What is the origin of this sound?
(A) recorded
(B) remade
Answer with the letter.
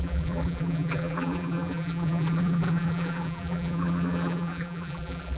B